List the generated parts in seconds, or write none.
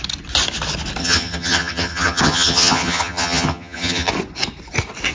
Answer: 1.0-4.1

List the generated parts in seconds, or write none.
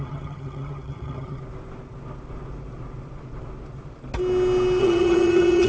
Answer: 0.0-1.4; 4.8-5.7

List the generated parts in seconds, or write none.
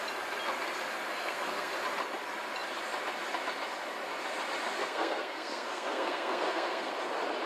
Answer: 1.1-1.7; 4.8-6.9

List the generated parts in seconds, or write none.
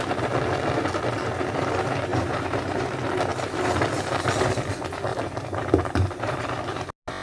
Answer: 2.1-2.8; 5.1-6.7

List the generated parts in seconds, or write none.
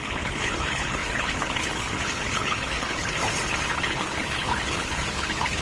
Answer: 0.0-3.2; 3.7-5.6